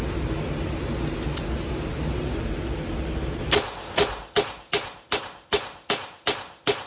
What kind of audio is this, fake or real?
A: real